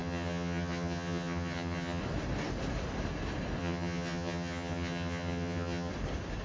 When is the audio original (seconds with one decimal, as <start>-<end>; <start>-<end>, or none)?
2.0-3.6; 5.9-6.4